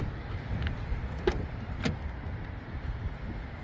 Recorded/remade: recorded